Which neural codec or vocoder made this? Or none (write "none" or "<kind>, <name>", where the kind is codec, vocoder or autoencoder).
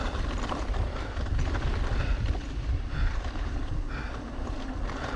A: vocoder, BigVGAN v2